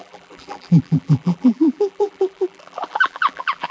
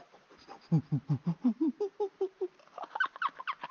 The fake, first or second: first